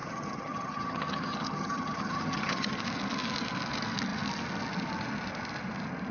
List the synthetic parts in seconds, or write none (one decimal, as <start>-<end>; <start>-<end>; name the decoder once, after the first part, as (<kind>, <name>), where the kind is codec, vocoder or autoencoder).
0.0-2.7 (vocoder, HiFi-GAN)